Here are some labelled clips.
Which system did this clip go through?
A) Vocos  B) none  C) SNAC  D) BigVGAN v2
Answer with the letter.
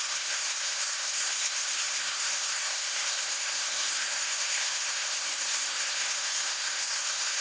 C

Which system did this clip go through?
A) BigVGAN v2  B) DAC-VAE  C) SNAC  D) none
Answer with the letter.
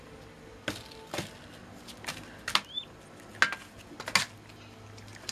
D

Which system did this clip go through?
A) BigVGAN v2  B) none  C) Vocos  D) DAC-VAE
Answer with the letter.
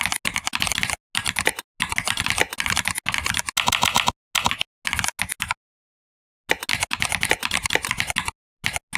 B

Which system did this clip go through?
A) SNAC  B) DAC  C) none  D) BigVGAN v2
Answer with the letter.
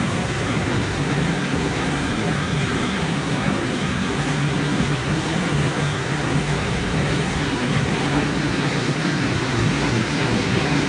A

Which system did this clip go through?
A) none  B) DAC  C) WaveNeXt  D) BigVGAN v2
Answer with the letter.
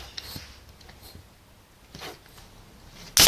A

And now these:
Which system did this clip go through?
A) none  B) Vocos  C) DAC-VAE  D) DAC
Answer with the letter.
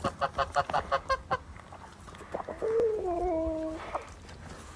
A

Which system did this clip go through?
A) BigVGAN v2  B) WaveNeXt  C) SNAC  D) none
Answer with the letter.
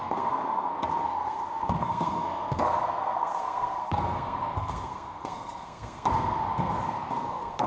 C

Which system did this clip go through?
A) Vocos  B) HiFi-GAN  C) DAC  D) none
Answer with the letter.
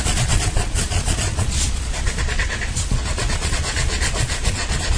A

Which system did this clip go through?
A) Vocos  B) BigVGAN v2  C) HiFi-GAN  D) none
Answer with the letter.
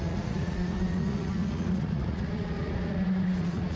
A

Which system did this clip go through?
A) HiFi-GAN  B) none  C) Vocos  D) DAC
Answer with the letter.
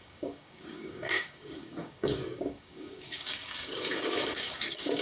D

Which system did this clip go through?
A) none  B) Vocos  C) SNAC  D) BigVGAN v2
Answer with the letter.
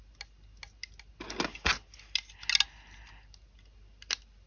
A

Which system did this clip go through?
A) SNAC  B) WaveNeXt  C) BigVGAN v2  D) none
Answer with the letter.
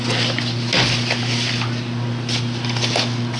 D